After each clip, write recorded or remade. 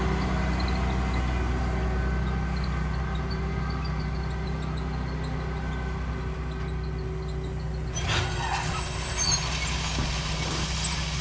recorded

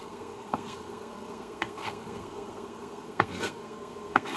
remade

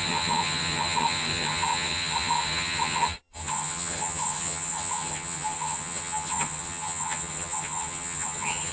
remade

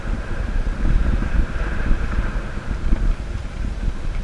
remade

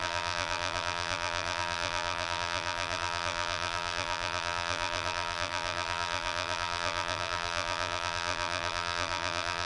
remade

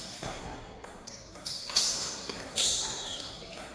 remade